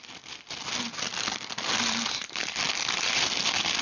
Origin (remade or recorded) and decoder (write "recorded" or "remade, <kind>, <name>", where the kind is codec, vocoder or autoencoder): recorded